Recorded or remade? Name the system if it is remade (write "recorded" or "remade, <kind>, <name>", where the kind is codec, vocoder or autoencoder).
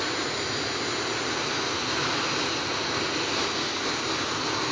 recorded